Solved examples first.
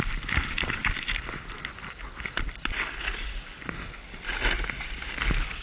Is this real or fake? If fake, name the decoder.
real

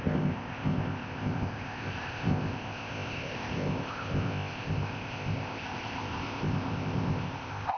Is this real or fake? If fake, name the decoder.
fake, codec, ZipCodec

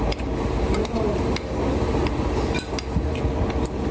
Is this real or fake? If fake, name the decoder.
real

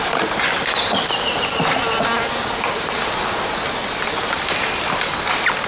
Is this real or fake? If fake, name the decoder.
real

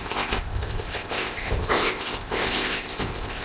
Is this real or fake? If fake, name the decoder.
fake, codec, ZipCodec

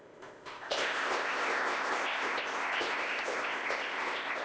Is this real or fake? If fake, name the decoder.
fake, codec, ZipCodec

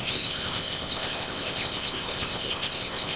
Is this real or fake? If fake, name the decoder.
fake, codec, ZipCodec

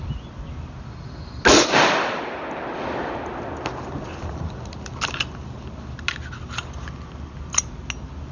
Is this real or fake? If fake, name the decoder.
real